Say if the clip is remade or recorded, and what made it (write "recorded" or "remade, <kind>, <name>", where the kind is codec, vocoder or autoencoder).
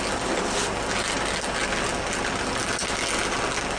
recorded